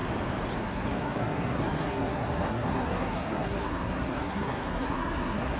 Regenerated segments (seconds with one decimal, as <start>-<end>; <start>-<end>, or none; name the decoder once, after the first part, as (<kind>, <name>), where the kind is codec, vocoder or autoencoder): 0.6-5.6 (codec, SNAC)